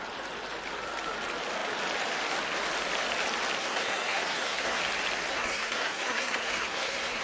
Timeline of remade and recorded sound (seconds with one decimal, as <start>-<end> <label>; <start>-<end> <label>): 0.0-3.6 recorded; 3.6-4.8 remade; 4.8-5.3 recorded; 5.3-7.2 remade